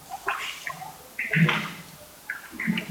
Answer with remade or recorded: recorded